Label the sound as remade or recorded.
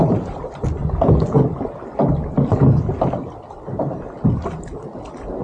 recorded